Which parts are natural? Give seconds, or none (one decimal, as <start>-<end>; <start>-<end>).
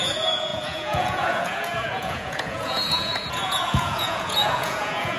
none